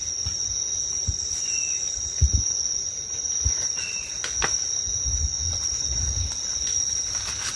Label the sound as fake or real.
real